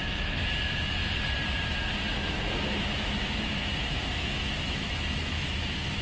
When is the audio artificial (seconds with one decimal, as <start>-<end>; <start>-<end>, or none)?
0.0-1.0; 2.1-6.0